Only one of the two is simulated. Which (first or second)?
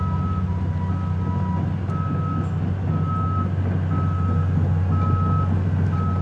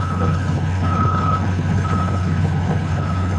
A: second